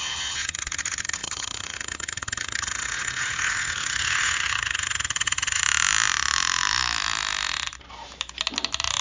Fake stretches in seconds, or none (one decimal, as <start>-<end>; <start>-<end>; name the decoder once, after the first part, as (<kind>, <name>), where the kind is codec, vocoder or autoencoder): 0.0-5.6 (vocoder, HiFi-GAN)